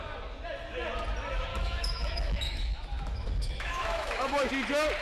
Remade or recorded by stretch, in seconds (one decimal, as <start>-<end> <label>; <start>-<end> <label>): 0.0-1.5 recorded; 1.5-4.5 remade; 4.5-5.0 recorded